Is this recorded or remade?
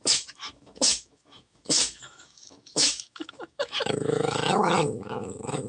remade